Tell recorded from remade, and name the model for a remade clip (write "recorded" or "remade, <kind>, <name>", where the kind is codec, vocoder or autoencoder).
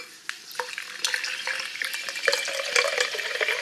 recorded